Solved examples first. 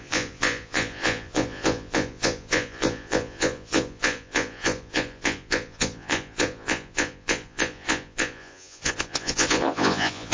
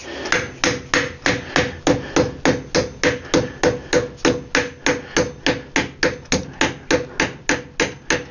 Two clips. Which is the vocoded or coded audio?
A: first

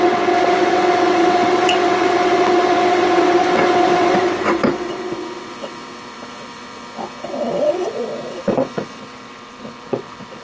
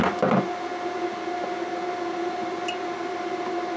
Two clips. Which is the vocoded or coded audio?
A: first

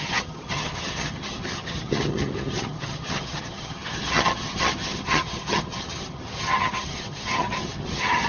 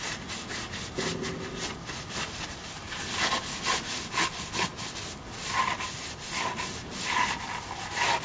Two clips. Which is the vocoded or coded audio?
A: first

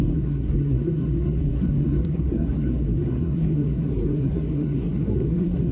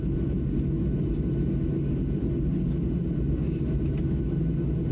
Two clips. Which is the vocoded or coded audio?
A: first